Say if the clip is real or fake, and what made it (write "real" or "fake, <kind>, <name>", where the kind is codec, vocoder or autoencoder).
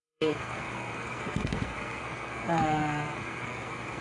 fake, codec, SNAC